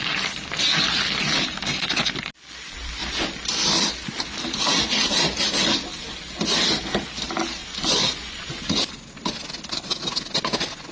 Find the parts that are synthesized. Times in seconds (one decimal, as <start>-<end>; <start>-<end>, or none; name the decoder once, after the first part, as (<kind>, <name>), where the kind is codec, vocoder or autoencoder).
7.6-8.8 (vocoder, Vocos)